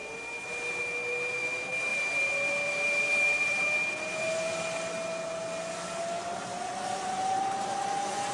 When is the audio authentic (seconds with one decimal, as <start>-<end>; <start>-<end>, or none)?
0.0-8.3